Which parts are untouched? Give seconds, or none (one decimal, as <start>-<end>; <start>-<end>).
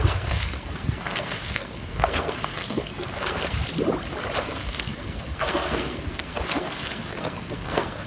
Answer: 3.6-4.4